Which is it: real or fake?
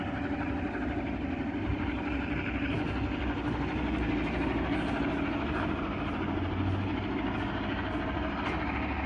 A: real